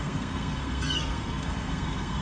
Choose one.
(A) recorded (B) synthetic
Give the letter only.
B